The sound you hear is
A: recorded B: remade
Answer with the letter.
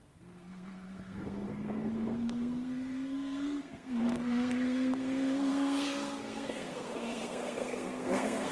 B